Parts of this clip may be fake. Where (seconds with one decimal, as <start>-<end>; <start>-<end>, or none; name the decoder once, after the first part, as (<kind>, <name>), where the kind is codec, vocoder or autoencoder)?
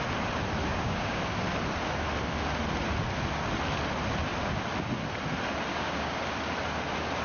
0.7-1.2 (codec, DAC); 5.7-6.2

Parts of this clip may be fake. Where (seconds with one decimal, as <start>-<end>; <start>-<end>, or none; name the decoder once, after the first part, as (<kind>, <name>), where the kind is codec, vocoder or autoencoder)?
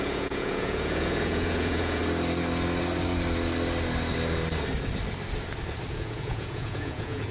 0.0-2.0 (vocoder, Vocos); 5.9-7.3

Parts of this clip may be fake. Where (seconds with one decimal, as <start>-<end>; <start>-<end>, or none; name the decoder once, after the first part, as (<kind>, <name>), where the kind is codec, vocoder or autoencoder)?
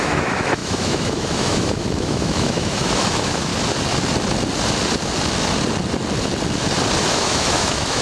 0.0-3.5 (autoencoder, DAC-VAE); 7.0-8.0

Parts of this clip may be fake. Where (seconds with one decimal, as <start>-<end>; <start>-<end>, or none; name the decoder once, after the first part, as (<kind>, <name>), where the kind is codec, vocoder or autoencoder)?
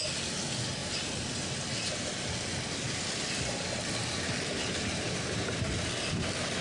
none